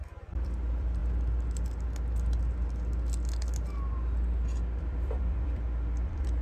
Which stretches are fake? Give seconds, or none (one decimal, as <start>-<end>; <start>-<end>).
0.0-1.0; 4.8-6.4